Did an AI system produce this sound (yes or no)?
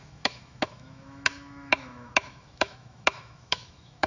yes